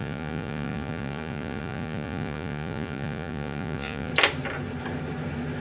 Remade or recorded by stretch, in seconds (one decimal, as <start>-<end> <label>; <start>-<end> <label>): 0.0-4.1 remade; 4.1-5.6 recorded